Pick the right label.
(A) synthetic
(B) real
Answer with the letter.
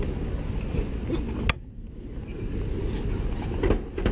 B